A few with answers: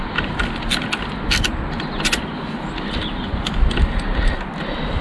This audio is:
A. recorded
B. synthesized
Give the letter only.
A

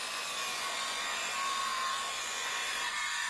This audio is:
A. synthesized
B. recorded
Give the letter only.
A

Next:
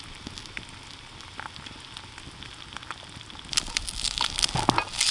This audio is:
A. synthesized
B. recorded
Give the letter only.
B